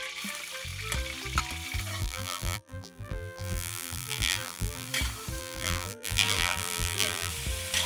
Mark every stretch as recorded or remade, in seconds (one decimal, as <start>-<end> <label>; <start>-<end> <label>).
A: 0.0-2.0 recorded; 2.0-4.9 remade; 4.9-5.4 recorded; 5.4-7.3 remade; 7.3-7.9 recorded